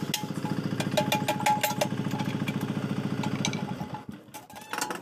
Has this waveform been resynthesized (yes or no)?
no